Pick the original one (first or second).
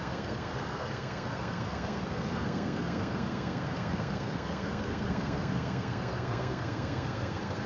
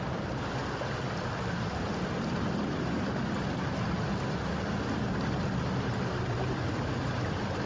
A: second